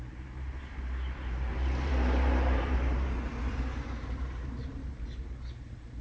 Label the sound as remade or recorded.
remade